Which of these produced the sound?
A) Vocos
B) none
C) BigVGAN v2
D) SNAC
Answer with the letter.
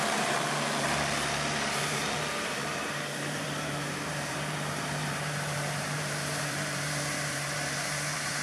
C